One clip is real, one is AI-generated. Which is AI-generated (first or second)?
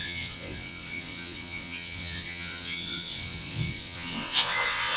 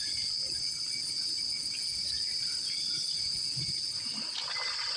first